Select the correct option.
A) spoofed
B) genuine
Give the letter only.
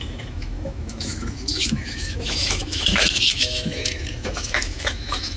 A